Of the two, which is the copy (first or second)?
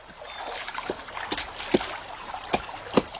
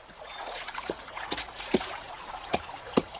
second